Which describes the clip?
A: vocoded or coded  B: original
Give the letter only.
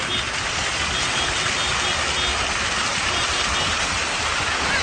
B